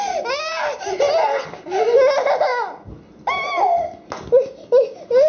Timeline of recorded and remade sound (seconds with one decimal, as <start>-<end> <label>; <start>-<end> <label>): 0.0-5.3 recorded